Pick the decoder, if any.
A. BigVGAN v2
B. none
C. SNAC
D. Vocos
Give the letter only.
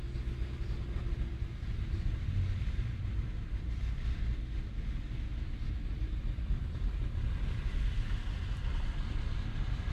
B